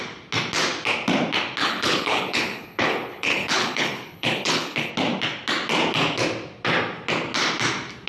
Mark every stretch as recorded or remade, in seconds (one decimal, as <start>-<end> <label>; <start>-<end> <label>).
0.0-1.6 recorded; 1.6-4.9 remade; 4.9-8.1 recorded